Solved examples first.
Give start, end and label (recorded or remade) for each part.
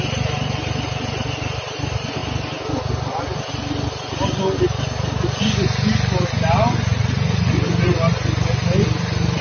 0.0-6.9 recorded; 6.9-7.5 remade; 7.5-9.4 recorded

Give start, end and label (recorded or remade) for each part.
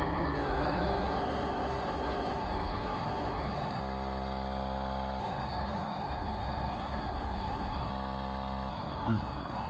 0.0-3.8 remade; 3.8-5.2 recorded; 5.2-7.9 remade; 7.9-8.7 recorded; 8.7-9.7 remade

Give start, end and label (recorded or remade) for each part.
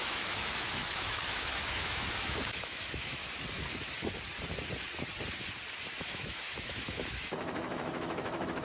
0.0-3.2 remade; 3.2-6.0 recorded; 6.0-8.6 remade